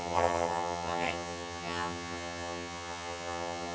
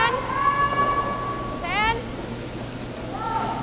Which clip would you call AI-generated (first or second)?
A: first